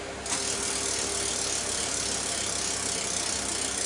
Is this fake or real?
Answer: real